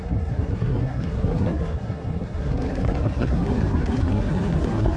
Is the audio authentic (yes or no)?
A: no